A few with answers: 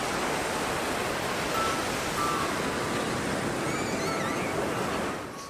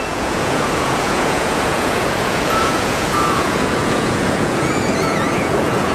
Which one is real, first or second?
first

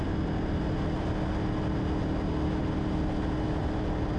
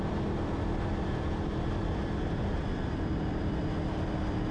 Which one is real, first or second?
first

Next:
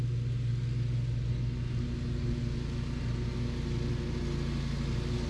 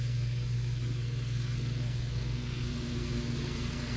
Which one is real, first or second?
first